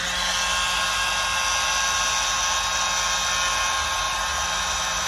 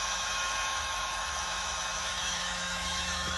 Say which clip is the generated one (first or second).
second